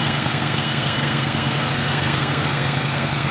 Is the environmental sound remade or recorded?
remade